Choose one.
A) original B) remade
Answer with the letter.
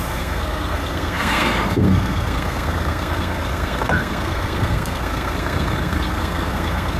B